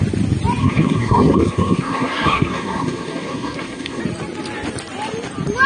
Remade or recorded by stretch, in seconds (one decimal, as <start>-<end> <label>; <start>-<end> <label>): 0.0-0.6 recorded; 0.6-4.0 remade; 4.0-5.7 recorded